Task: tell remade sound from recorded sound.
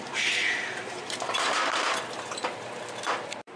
remade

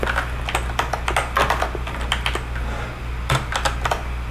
recorded